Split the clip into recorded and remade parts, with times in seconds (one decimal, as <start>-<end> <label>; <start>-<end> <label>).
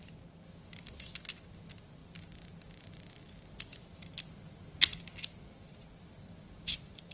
0.0-7.1 recorded